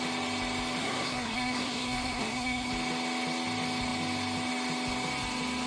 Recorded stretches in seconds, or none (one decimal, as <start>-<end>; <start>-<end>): 0.0-0.8; 2.7-5.7